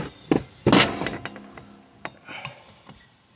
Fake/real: real